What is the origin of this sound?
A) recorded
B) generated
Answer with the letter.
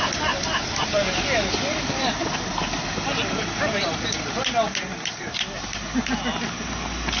A